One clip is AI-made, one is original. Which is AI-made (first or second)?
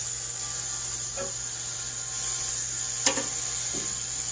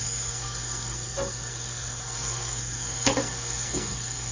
second